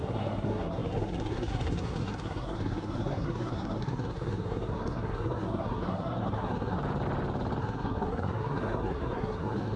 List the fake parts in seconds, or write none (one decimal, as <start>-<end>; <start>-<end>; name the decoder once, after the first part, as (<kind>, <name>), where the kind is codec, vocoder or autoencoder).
0.0-6.8 (codec, SNAC); 7.6-9.8